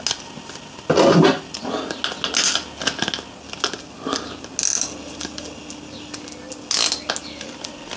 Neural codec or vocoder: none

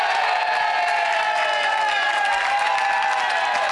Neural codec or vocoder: none